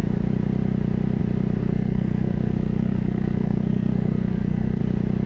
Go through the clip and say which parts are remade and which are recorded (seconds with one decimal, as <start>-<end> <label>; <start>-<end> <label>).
0.0-1.6 recorded; 1.6-4.8 remade; 4.8-5.3 recorded